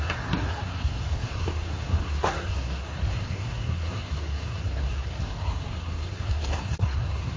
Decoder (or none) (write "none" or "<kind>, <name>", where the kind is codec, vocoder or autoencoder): codec, SNAC